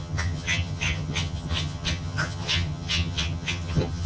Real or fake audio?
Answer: fake